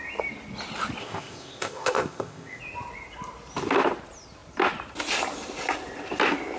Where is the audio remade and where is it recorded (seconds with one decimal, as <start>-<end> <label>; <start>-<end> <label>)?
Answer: 0.0-1.0 recorded; 1.0-2.6 remade; 2.6-6.6 recorded